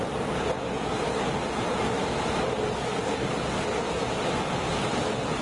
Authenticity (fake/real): real